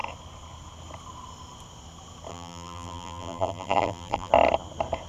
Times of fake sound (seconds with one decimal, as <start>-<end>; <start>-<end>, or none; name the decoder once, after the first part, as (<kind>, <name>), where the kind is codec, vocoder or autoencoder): 2.3-4.3 (vocoder, BigVGAN v2)